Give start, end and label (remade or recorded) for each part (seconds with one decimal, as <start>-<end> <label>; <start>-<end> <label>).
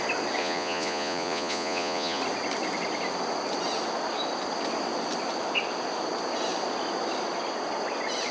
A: 0.0-0.4 recorded; 0.4-2.2 remade; 2.2-8.3 recorded